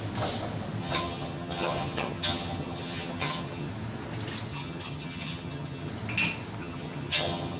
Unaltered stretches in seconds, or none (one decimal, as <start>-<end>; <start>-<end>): 0.0-0.8; 3.7-4.5; 5.9-6.6